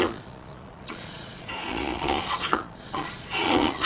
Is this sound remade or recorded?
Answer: remade